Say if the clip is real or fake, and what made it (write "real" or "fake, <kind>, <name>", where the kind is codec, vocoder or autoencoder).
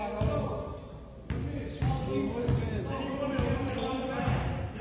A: real